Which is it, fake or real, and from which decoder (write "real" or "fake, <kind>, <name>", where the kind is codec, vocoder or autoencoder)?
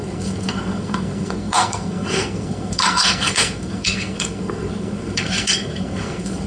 fake, codec, SNAC